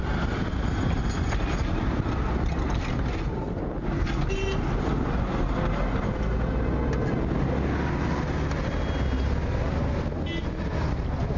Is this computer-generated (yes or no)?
no